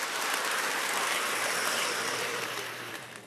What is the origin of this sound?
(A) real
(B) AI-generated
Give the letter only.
B